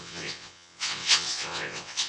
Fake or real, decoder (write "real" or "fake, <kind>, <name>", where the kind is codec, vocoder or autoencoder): fake, vocoder, WaveNeXt